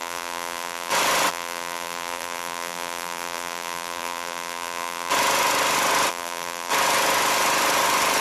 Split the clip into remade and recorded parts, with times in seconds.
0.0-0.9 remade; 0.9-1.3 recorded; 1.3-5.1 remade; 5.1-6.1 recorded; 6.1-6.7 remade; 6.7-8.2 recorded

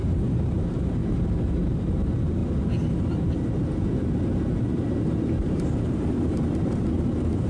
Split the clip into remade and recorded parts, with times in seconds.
0.0-1.0 remade; 1.0-1.5 recorded; 1.5-2.4 remade; 2.4-4.6 recorded; 4.6-7.5 remade

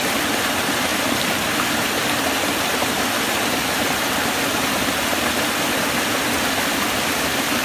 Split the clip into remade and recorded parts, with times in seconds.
0.0-7.6 recorded

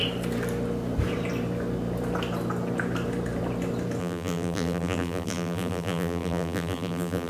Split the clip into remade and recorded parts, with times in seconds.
0.0-4.0 recorded; 4.0-7.3 remade